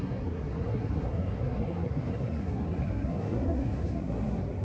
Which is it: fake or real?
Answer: fake